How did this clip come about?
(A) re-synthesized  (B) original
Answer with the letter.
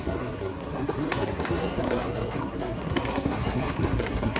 A